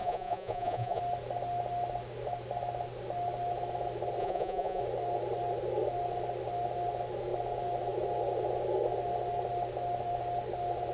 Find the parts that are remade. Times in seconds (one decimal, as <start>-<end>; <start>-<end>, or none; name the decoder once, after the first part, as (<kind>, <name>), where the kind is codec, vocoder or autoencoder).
0.0-1.0 (vocoder, Vocos); 4.2-4.8